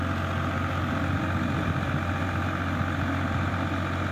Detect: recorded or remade recorded